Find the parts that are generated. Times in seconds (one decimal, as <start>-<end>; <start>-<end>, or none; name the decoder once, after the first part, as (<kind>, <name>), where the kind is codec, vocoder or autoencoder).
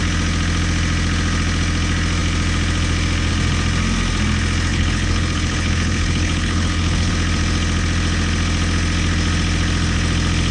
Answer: 4.7-7.1 (codec, HILCodec)